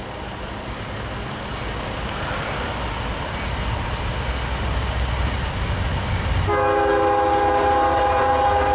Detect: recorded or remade recorded